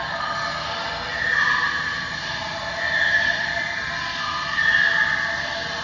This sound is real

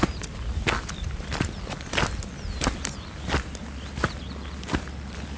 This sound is real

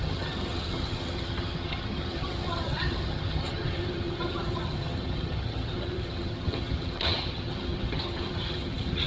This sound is fake